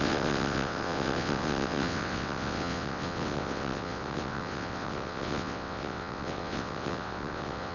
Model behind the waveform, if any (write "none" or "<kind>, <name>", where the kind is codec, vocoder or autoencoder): vocoder, WaveNeXt